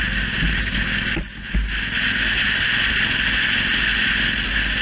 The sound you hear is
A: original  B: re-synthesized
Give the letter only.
A